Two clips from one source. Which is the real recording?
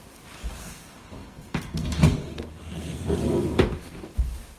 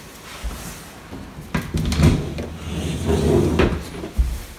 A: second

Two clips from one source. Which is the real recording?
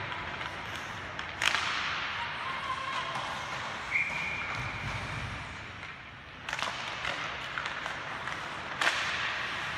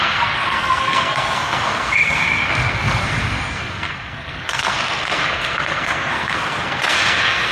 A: first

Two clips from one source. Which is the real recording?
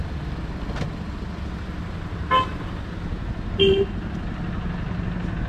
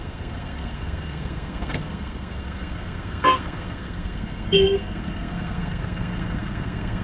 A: first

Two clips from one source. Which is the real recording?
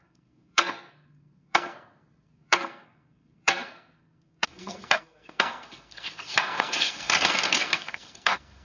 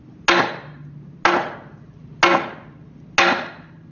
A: second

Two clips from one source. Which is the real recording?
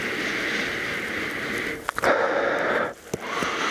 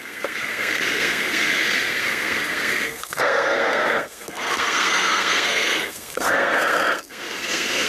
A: first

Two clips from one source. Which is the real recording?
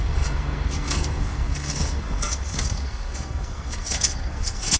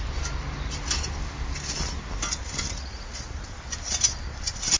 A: second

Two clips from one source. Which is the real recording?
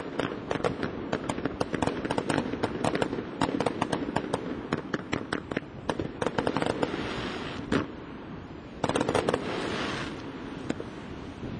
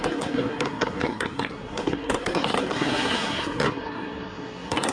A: first